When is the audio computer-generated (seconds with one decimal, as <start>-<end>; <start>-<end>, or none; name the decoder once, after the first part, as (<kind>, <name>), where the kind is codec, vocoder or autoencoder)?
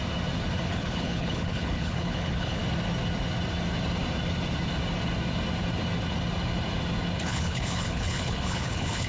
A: 0.6-2.6 (codec, HILCodec); 7.2-9.1